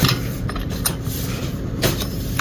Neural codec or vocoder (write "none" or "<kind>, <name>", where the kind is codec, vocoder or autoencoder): vocoder, BigVGAN v2